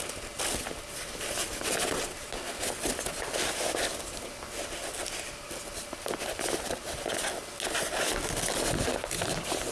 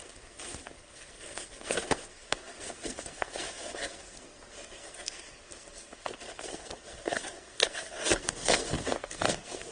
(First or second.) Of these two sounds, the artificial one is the second